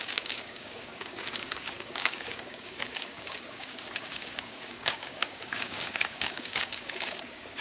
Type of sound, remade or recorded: remade